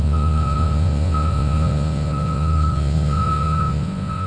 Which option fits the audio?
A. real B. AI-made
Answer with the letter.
B